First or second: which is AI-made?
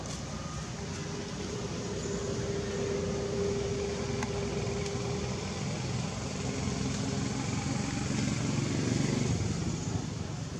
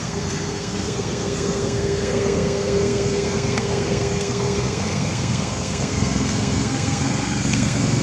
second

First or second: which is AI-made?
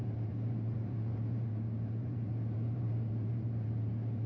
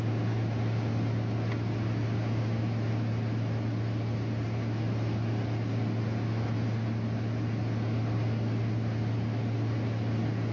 first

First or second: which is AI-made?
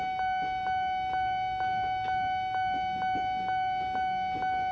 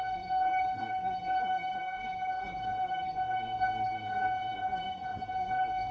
second